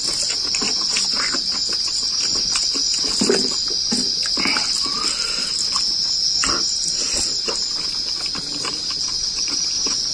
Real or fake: real